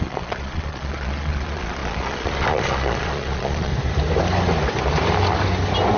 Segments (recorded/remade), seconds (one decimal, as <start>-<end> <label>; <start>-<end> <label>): 0.0-3.7 remade; 3.7-6.0 recorded